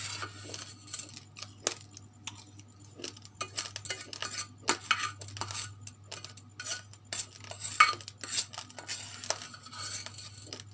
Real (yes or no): yes